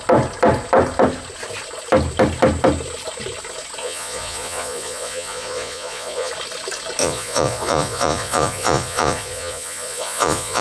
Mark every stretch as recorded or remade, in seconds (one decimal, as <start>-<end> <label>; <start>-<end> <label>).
0.0-3.8 recorded; 3.8-6.3 remade; 6.3-7.0 recorded; 7.0-10.6 remade

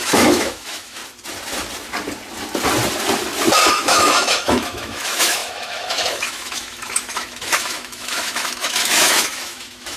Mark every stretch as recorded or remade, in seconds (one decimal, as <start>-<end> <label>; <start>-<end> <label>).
0.0-1.0 remade; 1.0-3.7 recorded; 3.7-10.0 remade